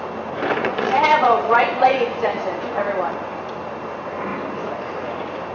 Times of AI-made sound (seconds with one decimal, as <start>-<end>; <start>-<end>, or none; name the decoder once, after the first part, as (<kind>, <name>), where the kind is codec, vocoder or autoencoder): 0.6-3.4 (vocoder, Vocos)